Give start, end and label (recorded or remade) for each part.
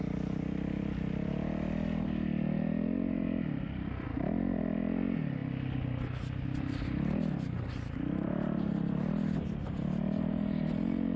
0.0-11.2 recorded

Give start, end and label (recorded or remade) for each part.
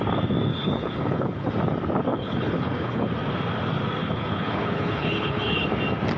0.0-0.5 recorded; 0.5-1.5 remade; 1.5-2.1 recorded; 2.1-3.1 remade; 3.1-4.0 recorded; 4.0-5.7 remade; 5.7-6.2 recorded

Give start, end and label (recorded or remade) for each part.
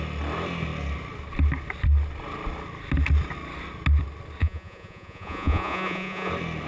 0.0-4.4 recorded; 4.4-6.3 remade; 6.3-6.7 recorded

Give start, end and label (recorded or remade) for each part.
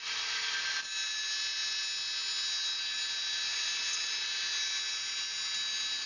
0.0-6.1 recorded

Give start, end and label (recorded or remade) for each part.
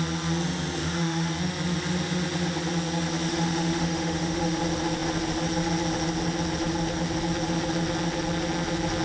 0.0-0.8 recorded; 0.8-1.3 remade; 1.3-3.3 recorded; 3.3-4.6 remade; 4.6-9.0 recorded